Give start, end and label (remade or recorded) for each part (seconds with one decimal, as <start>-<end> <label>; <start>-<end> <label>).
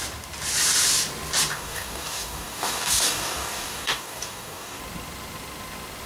0.0-1.5 recorded; 1.5-4.8 remade; 4.8-6.1 recorded